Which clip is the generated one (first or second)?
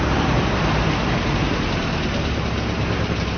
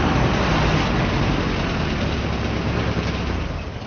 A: first